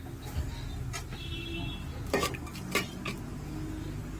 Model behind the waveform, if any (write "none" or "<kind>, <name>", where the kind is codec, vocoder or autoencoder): none